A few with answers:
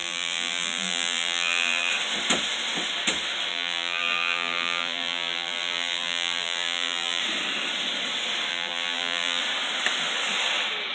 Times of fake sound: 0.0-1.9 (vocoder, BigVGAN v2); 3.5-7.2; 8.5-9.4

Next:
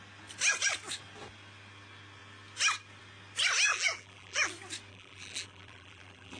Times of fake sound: 3.7-4.5 (vocoder, BigVGAN v2); 4.9-6.4

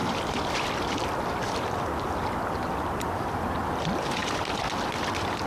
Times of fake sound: 0.0-2.4 (vocoder, BigVGAN v2)

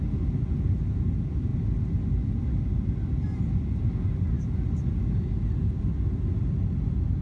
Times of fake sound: none

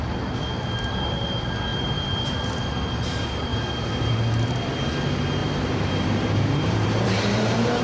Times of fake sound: 1.7-2.2 (vocoder, BigVGAN v2); 3.5-4.1; 5.4-7.8